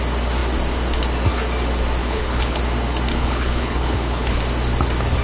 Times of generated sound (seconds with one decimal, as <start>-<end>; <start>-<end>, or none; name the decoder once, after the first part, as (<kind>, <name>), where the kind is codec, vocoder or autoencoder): 2.0-2.6 (codec, HILCodec); 3.1-4.4